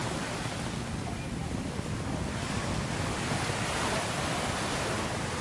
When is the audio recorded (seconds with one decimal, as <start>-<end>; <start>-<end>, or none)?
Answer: 0.0-1.4; 4.6-5.4